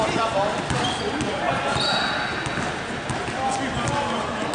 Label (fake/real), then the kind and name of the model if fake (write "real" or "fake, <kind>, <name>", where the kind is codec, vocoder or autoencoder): real